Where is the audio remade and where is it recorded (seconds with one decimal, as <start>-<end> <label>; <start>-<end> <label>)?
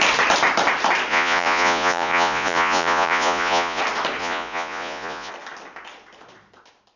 0.0-1.1 recorded; 1.1-3.8 remade; 3.8-4.2 recorded; 4.2-5.3 remade; 5.3-7.0 recorded